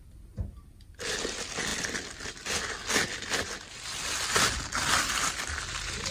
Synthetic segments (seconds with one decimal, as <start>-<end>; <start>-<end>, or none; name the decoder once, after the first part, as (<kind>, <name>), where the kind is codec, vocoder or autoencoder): none